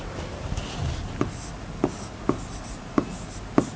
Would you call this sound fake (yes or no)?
no